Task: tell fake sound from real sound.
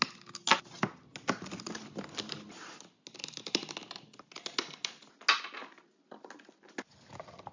real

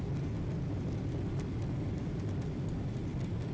real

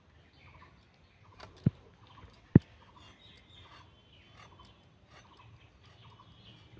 real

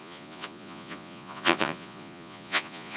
fake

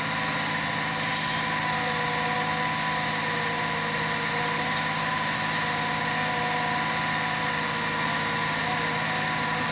real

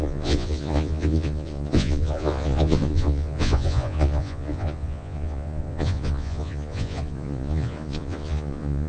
fake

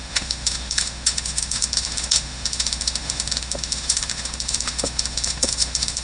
fake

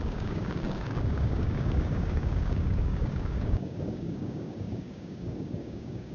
fake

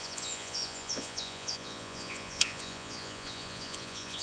fake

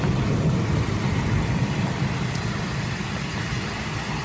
real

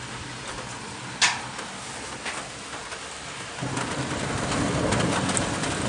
real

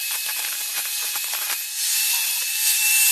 fake